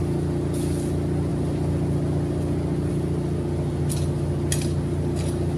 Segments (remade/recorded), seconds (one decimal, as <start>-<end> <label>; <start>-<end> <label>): 0.0-5.6 recorded